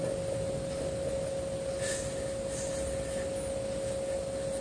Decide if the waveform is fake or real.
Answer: real